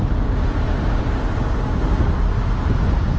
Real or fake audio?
real